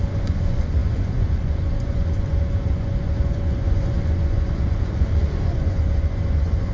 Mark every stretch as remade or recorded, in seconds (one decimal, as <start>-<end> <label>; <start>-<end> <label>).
0.0-6.7 remade